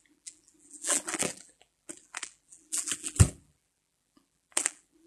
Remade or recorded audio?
remade